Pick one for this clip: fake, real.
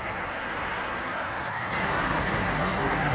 fake